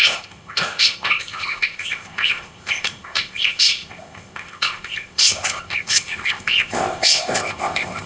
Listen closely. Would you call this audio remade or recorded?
remade